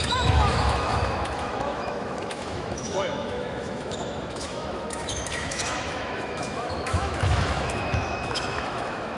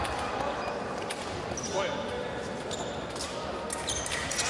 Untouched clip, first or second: second